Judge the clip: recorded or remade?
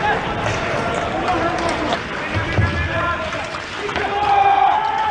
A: recorded